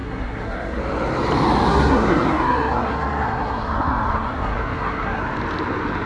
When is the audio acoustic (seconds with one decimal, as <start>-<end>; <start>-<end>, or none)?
0.8-1.7; 5.2-6.1